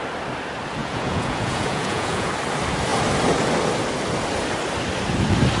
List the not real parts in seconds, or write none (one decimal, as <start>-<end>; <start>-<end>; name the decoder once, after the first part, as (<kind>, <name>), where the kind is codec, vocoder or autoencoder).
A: 0.8-2.3 (vocoder, Vocos)